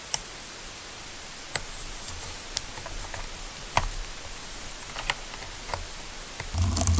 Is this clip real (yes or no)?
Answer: yes